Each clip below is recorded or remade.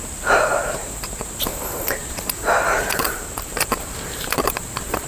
remade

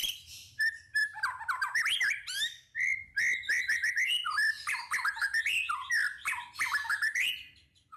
remade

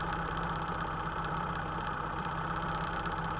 remade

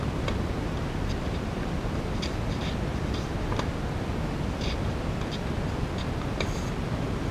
recorded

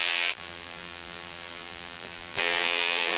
remade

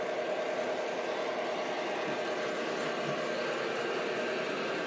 recorded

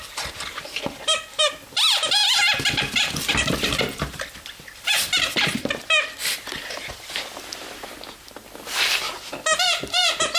remade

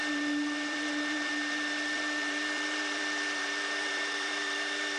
remade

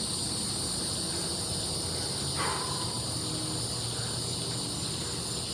recorded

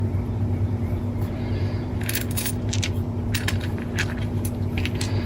remade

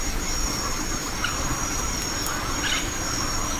recorded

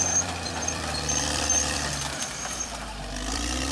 remade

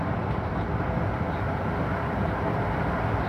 remade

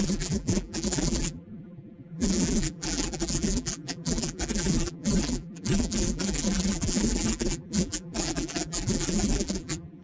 remade